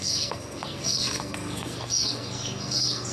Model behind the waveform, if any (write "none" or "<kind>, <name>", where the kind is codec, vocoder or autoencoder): codec, SNAC